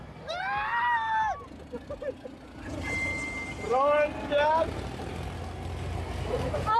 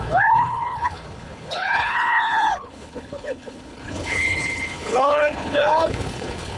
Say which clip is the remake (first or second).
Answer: second